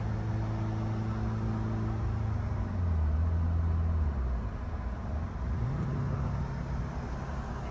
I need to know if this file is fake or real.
real